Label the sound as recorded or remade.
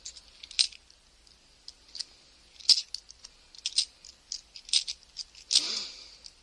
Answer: recorded